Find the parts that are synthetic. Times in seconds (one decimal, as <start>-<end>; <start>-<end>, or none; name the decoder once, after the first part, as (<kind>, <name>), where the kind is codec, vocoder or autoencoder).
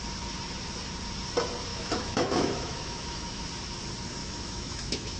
1.7-3.4 (autoencoder, DAC-VAE); 4.2-5.2